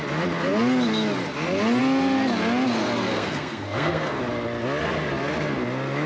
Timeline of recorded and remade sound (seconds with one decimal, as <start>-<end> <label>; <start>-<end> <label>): 0.0-3.1 recorded; 3.1-4.2 remade; 4.2-6.1 recorded